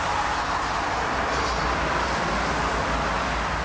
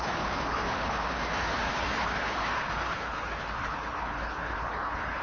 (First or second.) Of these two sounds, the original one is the first